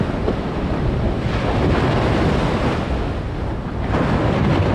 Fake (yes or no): no